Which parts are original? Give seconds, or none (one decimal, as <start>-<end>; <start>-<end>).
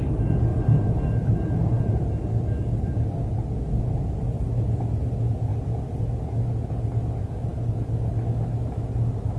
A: 0.0-0.5; 3.8-9.4